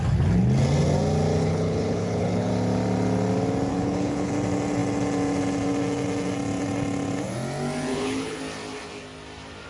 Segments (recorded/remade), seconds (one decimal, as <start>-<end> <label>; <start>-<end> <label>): 0.0-1.4 recorded; 1.4-2.5 remade; 2.5-3.7 recorded; 3.7-4.3 remade; 4.3-7.9 recorded; 7.9-8.4 remade; 8.4-9.7 recorded